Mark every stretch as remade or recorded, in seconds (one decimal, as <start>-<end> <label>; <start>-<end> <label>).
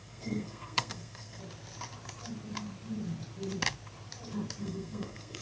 0.0-1.4 remade; 1.4-4.6 recorded; 4.6-5.4 remade